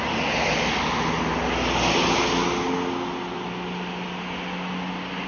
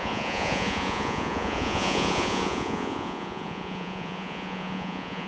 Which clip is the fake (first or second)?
second